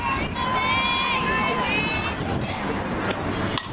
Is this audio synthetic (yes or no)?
no